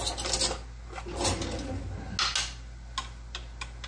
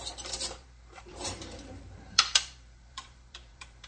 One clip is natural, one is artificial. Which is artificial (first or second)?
second